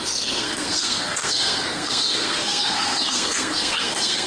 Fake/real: fake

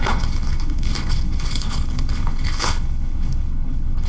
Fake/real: fake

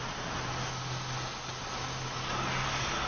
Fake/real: real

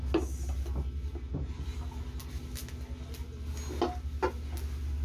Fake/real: real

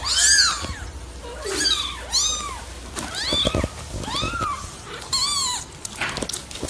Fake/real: real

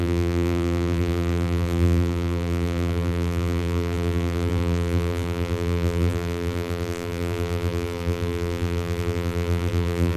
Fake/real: fake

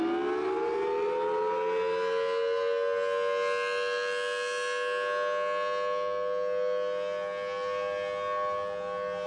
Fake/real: real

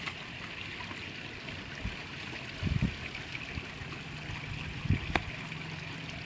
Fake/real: real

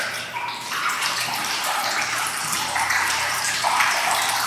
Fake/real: fake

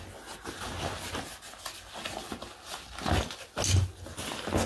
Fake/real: real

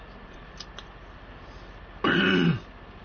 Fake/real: real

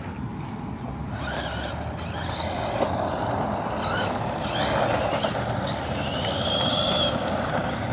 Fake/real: real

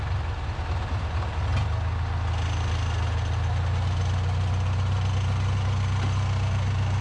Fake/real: real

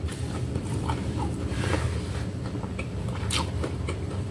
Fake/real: fake